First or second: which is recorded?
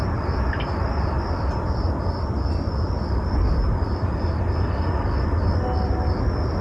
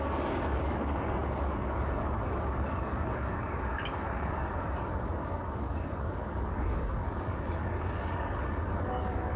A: first